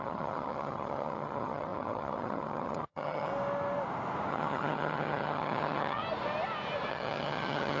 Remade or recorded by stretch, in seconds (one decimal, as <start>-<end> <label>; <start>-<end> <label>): 0.0-3.3 remade; 3.3-4.3 recorded; 4.3-6.0 remade; 6.0-6.9 recorded; 6.9-7.8 remade